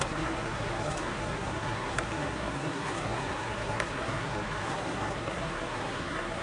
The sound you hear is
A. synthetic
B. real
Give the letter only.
A